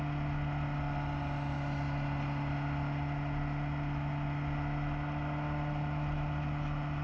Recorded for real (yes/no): yes